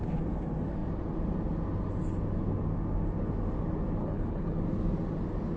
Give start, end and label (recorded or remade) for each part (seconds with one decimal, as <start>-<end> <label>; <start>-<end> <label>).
0.0-4.0 recorded; 4.0-4.6 remade; 4.6-5.6 recorded